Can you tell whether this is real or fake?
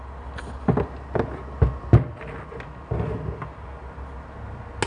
real